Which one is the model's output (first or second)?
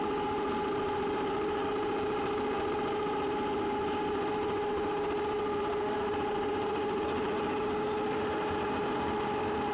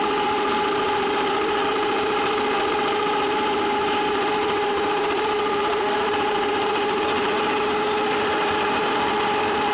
second